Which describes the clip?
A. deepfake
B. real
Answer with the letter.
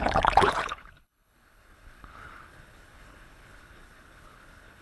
A